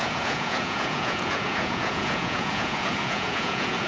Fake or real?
fake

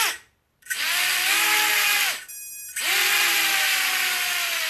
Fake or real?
real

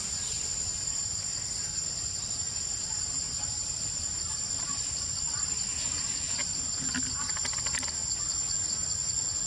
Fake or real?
real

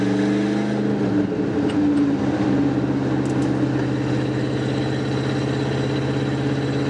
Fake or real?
real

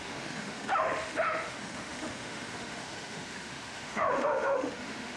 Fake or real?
fake